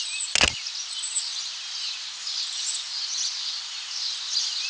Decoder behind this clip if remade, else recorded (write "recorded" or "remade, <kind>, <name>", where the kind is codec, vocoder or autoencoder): recorded